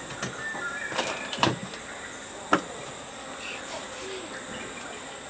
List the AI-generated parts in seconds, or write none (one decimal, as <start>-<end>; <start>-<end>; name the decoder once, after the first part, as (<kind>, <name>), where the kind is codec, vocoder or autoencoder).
none